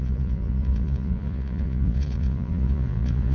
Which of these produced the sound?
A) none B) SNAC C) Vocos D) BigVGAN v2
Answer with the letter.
C